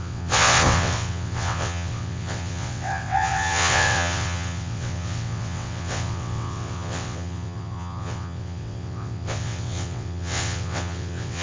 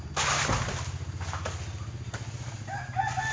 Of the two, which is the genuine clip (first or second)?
second